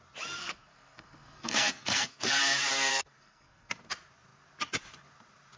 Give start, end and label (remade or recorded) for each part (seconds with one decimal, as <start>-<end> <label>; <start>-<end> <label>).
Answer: 0.0-0.4 recorded; 0.4-2.4 remade; 2.4-2.9 recorded; 2.9-3.7 remade; 3.7-5.6 recorded